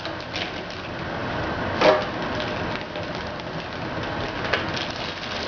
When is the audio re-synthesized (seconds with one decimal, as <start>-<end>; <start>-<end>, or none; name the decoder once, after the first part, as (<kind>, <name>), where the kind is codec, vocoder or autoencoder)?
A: none